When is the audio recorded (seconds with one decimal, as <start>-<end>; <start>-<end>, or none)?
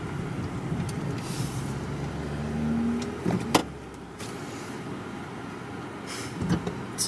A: 0.0-7.1